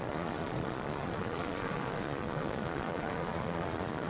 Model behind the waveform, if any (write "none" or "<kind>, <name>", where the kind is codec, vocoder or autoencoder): vocoder, Vocos